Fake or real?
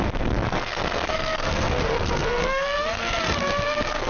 fake